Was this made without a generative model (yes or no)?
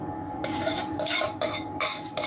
no